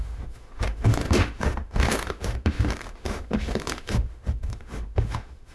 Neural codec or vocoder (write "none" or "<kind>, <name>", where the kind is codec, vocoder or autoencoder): autoencoder, DAC-VAE